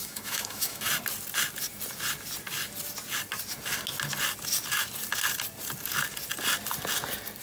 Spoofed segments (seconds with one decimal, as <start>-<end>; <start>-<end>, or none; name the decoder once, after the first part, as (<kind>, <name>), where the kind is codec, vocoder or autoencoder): 0.0-0.9 (autoencoder, DAC-VAE)